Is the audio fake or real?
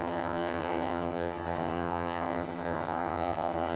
fake